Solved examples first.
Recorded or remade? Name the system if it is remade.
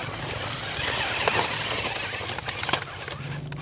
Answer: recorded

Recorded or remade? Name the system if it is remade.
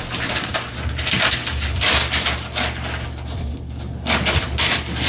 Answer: recorded